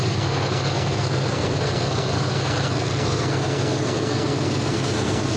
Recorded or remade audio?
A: remade